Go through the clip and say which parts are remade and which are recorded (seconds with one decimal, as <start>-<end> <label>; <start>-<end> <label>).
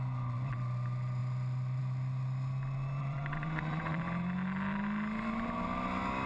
0.0-3.0 recorded; 3.0-4.0 remade; 4.0-6.3 recorded